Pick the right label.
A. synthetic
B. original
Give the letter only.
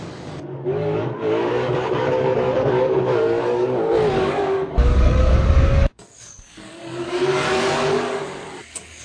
A